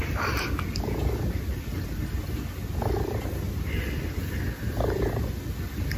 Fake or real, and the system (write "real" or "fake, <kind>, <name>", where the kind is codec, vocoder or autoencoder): real